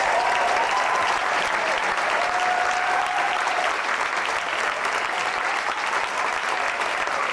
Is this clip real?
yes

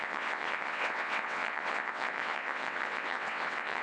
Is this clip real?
no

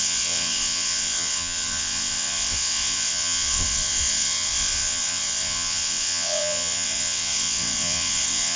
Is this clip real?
no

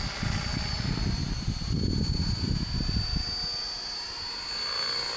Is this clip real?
yes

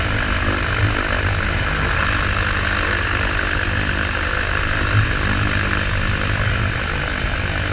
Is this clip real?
yes